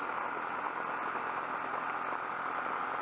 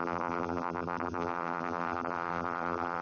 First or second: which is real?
first